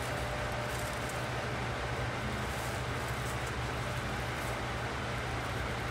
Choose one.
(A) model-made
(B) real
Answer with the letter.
B